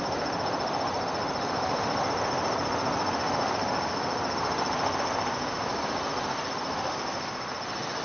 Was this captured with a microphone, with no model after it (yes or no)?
yes